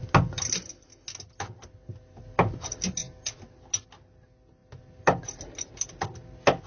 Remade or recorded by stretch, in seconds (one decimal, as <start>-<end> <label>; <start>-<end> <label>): 0.0-6.7 recorded